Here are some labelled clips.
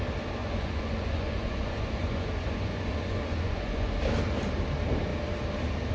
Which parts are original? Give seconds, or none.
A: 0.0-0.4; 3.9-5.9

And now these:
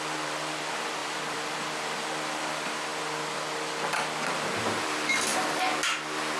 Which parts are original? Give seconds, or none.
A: 2.9-4.6; 5.3-6.4